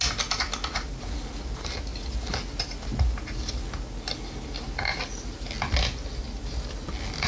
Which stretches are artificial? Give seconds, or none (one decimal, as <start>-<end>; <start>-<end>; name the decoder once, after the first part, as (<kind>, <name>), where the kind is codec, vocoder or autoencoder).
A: none